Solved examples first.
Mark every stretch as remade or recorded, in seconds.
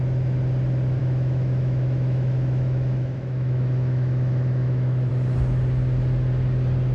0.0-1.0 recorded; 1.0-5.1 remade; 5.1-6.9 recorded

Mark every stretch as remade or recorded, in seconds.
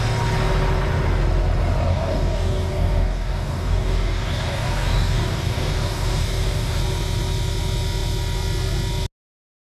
0.0-1.9 recorded; 1.9-6.8 remade; 6.8-9.7 recorded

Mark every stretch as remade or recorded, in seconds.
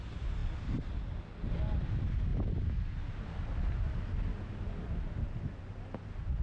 0.0-6.4 recorded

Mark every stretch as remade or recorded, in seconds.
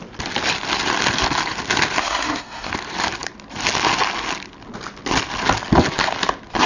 0.0-2.0 recorded; 2.0-2.7 remade; 2.7-6.7 recorded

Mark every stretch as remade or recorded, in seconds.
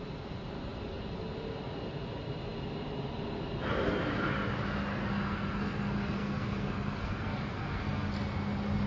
0.0-4.9 recorded; 4.9-8.1 remade; 8.1-8.9 recorded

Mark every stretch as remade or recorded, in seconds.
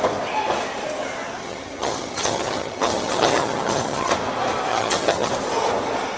0.0-1.4 recorded; 1.4-4.1 remade; 4.1-4.7 recorded; 4.7-5.3 remade; 5.3-6.2 recorded